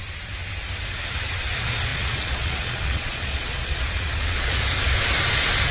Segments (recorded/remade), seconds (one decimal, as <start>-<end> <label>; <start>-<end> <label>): 0.0-1.9 recorded; 1.9-4.6 remade; 4.6-5.7 recorded